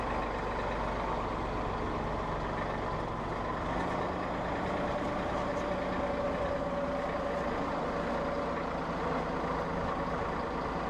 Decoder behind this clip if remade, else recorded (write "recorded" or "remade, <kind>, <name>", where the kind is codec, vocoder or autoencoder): recorded